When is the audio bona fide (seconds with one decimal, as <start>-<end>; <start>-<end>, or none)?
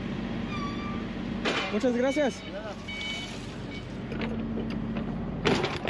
0.0-5.9